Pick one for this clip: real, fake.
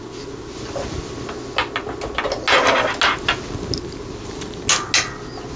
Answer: real